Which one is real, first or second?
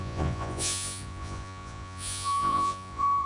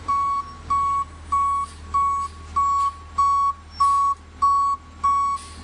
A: second